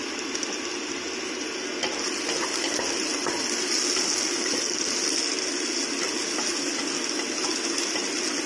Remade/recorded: recorded